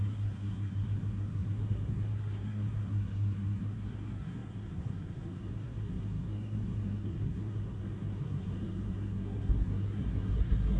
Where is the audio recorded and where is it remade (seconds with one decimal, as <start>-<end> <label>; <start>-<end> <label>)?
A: 0.0-10.8 remade